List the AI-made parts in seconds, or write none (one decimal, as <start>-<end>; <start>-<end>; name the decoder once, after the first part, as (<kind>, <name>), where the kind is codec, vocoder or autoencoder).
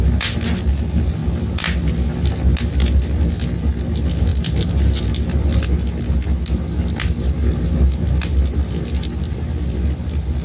none